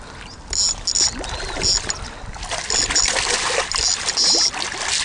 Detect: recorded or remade recorded